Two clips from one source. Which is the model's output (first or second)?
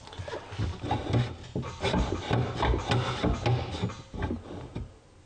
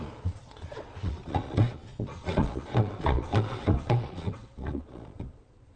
second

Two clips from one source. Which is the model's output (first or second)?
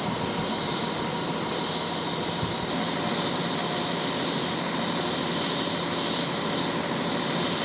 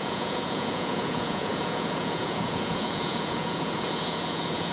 second